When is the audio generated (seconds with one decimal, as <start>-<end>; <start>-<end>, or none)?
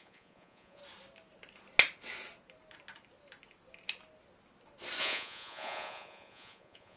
0.0-0.8; 5.0-7.0